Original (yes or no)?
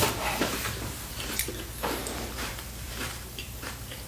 no